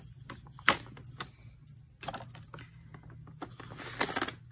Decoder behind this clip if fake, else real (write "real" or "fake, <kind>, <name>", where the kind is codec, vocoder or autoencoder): real